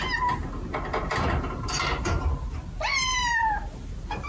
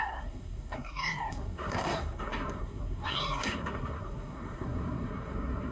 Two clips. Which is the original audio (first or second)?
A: first